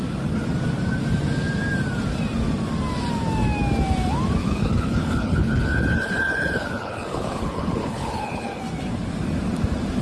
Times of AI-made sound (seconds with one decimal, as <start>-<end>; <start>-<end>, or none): 4.4-8.6